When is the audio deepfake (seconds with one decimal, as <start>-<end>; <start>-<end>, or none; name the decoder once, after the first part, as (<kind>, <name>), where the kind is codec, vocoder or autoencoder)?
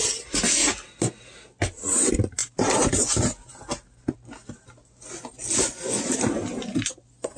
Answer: 2.4-3.5 (vocoder, BigVGAN v2)